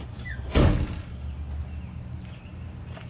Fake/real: real